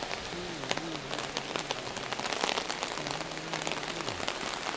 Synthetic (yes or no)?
no